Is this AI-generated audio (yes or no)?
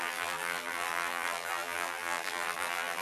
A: yes